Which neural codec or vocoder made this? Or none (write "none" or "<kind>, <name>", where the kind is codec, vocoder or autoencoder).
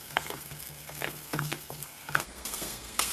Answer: codec, SNAC